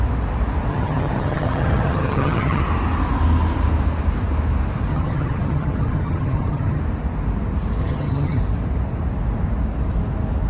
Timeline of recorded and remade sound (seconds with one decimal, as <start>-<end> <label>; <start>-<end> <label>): 0.0-0.7 recorded; 0.7-2.6 remade; 2.6-4.9 recorded; 4.9-6.8 remade; 6.8-7.8 recorded; 7.8-8.4 remade; 8.4-10.5 recorded